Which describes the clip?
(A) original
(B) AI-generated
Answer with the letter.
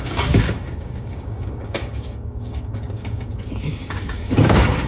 B